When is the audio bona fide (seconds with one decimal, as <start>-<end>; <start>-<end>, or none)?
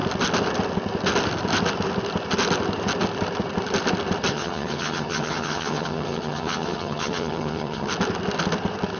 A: 0.0-4.3; 7.9-9.0